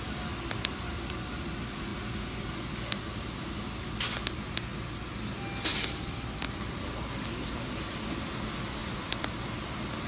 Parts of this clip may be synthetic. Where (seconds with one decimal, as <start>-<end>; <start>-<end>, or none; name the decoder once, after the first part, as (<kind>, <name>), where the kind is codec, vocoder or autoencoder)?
5.7-7.0 (vocoder, BigVGAN v2); 8.8-9.4